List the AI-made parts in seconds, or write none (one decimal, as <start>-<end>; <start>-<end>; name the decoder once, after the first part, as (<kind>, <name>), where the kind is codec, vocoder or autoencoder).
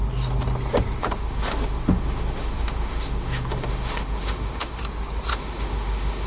1.0-4.8 (autoencoder, DAC-VAE); 5.3-6.3